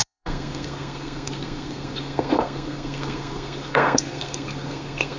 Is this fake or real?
fake